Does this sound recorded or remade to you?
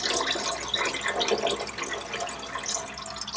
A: recorded